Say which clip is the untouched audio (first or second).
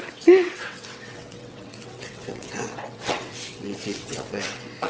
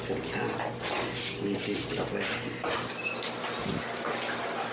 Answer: second